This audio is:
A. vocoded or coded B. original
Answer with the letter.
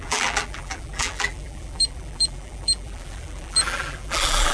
A